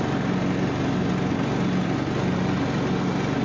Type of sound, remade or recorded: recorded